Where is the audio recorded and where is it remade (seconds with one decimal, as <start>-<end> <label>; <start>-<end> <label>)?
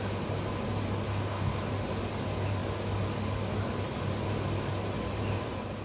0.0-1.1 recorded; 1.1-1.6 remade; 1.6-5.8 recorded